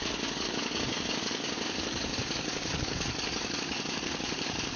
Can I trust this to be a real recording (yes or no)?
no